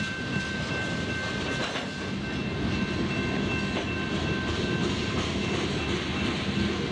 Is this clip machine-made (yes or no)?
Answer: no